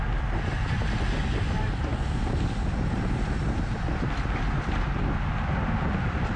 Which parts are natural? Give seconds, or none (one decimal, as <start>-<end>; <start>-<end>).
0.0-6.4